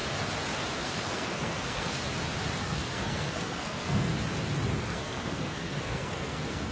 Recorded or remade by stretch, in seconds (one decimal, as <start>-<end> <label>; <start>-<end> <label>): 0.0-0.8 recorded; 0.8-2.0 remade; 2.0-2.6 recorded; 2.6-4.1 remade; 4.1-4.8 recorded; 4.8-6.7 remade